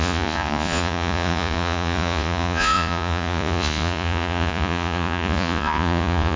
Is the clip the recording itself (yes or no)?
no